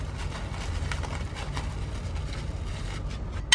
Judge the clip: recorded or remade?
recorded